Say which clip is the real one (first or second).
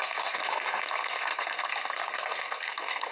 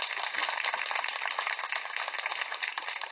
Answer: second